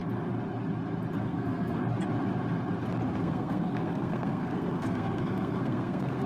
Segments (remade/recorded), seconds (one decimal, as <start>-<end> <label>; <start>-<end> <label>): 0.0-1.2 recorded; 1.2-1.8 remade; 1.8-3.2 recorded; 3.2-6.3 remade